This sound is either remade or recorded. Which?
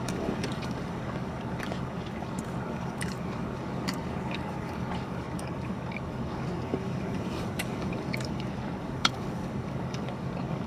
remade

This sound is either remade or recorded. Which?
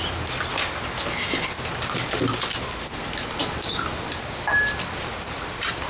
recorded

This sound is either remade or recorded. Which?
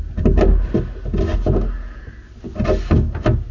recorded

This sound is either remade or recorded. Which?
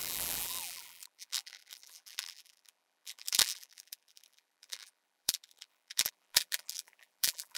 remade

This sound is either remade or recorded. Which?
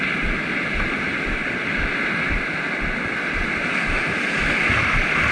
recorded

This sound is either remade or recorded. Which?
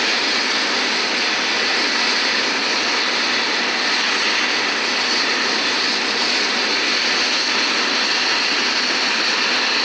recorded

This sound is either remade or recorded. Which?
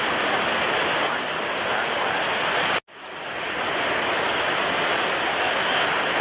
recorded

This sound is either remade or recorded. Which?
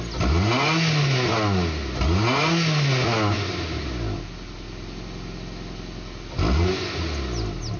recorded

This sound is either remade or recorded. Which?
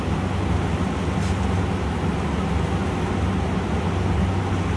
recorded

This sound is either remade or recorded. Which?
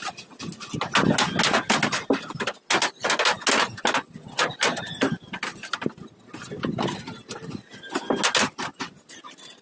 recorded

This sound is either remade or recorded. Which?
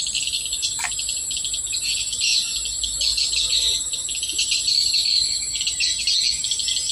recorded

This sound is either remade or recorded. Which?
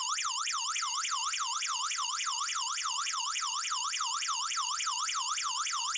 remade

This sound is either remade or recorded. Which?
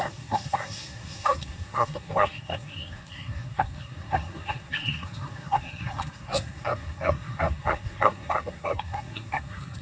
remade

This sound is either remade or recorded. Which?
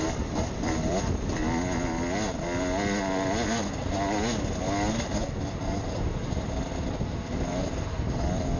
recorded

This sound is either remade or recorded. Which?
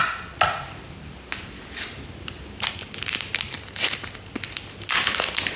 recorded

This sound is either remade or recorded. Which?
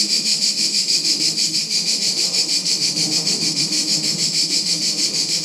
remade